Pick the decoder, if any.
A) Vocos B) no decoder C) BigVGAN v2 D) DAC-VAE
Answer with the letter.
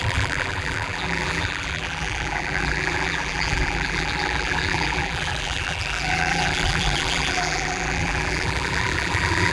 C